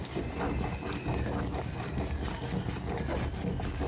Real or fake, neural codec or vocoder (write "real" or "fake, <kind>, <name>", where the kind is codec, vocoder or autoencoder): real